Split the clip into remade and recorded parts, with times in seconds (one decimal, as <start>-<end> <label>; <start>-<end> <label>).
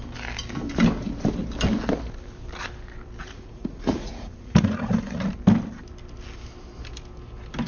0.0-3.2 recorded; 3.2-5.3 remade; 5.3-7.7 recorded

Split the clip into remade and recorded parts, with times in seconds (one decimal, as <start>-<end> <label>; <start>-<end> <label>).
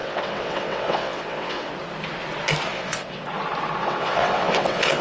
0.0-1.7 remade; 1.7-2.7 recorded; 2.7-3.2 remade; 3.2-3.8 recorded; 3.8-5.0 remade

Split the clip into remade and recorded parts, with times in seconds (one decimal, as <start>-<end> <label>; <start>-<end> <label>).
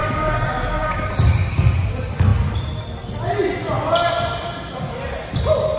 0.0-1.1 remade; 1.1-5.8 recorded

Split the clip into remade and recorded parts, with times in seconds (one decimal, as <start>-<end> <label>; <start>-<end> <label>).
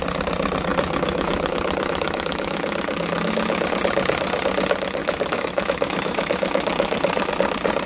0.0-0.7 recorded; 0.7-3.7 remade; 3.7-5.0 recorded; 5.0-7.3 remade; 7.3-7.9 recorded